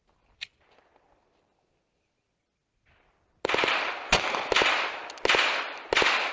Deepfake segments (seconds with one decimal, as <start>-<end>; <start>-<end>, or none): none